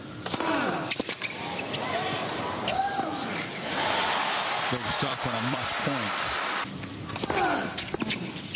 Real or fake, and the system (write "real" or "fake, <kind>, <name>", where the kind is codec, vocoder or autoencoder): fake, vocoder, BigVGAN v2